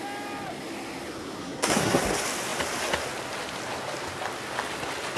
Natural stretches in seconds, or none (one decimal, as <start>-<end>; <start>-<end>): 0.0-1.4; 2.0-5.2